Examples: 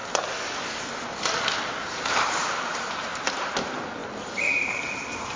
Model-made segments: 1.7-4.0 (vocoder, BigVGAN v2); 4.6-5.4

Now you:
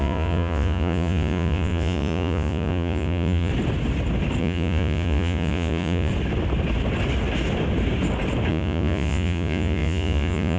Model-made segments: 0.0-3.5 (vocoder, Vocos); 4.4-6.1; 8.5-10.6

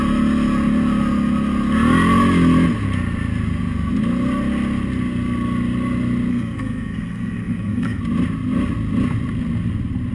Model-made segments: 6.3-8.0 (codec, SNAC)

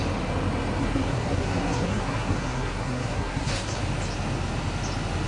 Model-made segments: 0.8-3.8 (codec, SNAC)

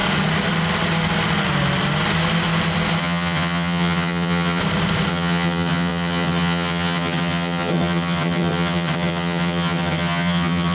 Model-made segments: 3.0-4.6 (vocoder, HiFi-GAN); 5.1-10.7

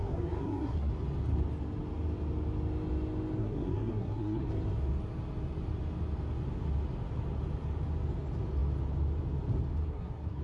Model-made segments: 0.0-0.9 (codec, SNAC); 3.4-4.5; 9.8-10.4